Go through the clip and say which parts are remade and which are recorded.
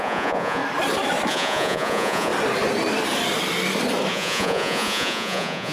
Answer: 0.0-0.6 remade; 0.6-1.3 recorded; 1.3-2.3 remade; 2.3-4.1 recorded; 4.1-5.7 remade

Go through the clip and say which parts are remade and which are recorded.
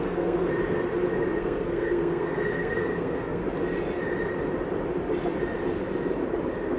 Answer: 0.0-0.5 remade; 0.5-1.4 recorded; 1.4-3.4 remade; 3.4-6.8 recorded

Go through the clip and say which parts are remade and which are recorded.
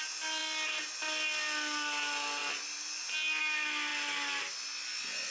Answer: 0.0-5.3 recorded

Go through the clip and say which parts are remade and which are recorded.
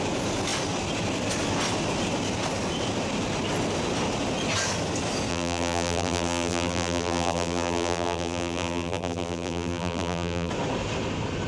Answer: 0.0-5.3 recorded; 5.3-10.5 remade; 10.5-11.5 recorded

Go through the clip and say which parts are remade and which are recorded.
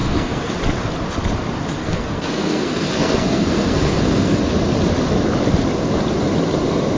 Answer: 0.0-0.5 remade; 0.5-1.8 recorded; 1.8-4.4 remade; 4.4-7.0 recorded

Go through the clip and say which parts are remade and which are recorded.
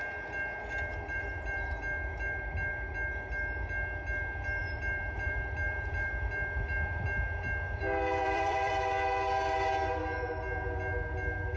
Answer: 0.0-0.9 recorded; 0.9-1.8 remade; 1.8-4.6 recorded; 4.6-6.1 remade; 6.1-8.2 recorded; 8.2-8.7 remade; 8.7-11.6 recorded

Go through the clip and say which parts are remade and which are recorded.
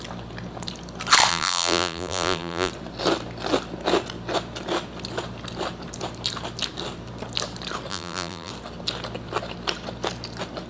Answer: 0.0-1.3 recorded; 1.3-2.7 remade; 2.7-7.9 recorded; 7.9-8.5 remade; 8.5-10.7 recorded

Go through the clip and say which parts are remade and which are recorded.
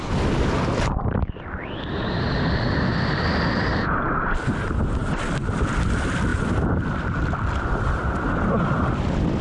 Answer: 0.0-9.4 recorded